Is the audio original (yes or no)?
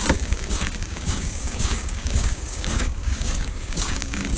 no